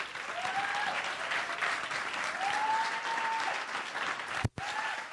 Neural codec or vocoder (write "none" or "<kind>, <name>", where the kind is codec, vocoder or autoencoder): vocoder, BigVGAN v2